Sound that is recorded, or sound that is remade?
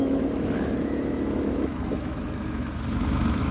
remade